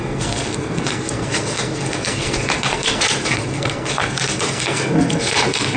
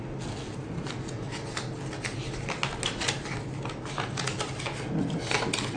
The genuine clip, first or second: second